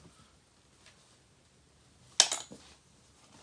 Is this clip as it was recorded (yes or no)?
yes